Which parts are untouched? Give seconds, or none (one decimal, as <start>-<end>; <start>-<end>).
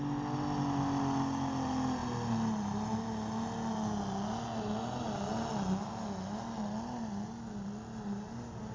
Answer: 0.0-8.7